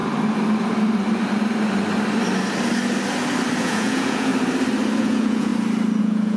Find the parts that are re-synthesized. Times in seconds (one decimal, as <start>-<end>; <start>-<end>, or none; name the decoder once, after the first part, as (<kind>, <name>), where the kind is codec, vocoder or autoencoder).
3.6-4.3 (vocoder, Vocos); 5.0-5.5; 6.0-6.4